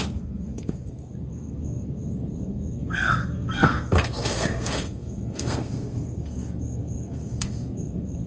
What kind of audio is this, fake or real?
fake